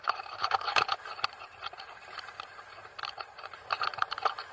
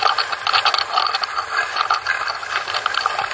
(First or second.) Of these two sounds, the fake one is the first